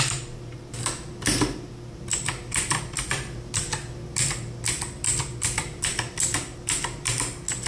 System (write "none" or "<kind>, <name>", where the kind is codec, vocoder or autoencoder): none